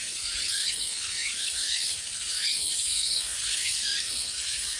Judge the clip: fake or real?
fake